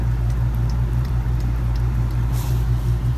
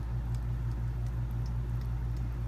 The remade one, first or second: first